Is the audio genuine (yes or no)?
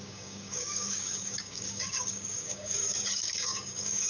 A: no